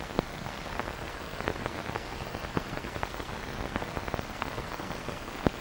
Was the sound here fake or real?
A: fake